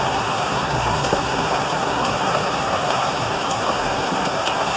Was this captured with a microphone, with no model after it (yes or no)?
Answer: no